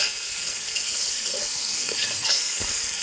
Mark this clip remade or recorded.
remade